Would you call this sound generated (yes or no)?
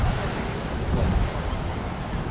no